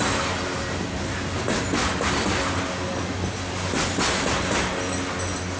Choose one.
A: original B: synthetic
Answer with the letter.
A